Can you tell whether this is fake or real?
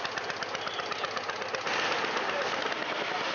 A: real